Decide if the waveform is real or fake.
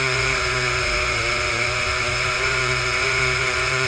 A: fake